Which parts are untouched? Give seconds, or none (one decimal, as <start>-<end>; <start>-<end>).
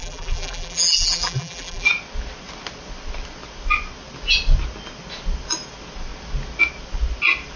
1.9-7.6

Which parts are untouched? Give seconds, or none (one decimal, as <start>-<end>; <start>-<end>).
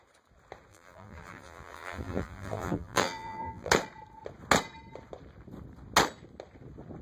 0.0-0.7; 3.7-7.0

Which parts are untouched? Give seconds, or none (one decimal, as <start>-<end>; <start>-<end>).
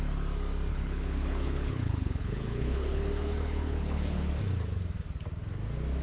0.0-0.7; 4.3-6.0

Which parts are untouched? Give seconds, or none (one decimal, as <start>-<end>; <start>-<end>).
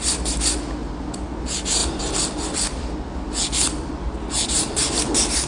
0.0-5.5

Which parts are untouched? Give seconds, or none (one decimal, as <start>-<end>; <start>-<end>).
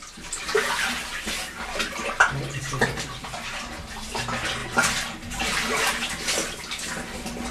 0.0-7.5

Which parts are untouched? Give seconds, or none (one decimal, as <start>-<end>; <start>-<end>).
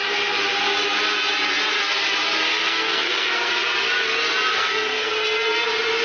0.0-2.5; 3.5-4.5; 5.1-6.0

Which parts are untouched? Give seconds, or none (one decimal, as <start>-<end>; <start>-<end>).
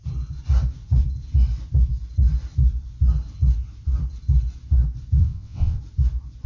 0.0-5.2; 5.8-6.5